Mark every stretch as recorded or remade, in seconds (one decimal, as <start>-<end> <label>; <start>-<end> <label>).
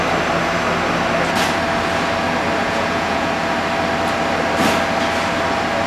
0.0-2.6 recorded; 2.6-3.3 remade; 3.3-5.9 recorded